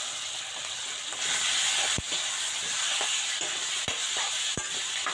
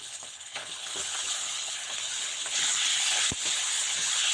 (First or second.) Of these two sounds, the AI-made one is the second